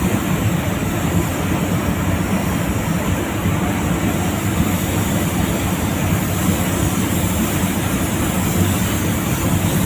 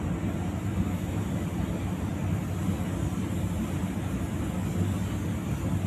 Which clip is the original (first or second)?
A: second